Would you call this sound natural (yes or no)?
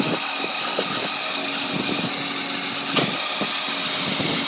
yes